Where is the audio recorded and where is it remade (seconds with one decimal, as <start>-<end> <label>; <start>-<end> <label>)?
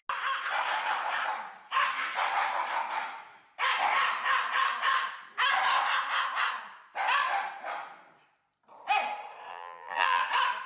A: 0.0-9.5 recorded; 9.5-10.2 remade; 10.2-10.7 recorded